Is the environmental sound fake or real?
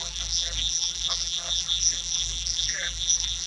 fake